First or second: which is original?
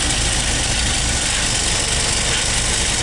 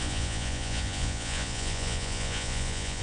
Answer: first